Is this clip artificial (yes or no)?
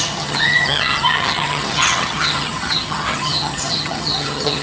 yes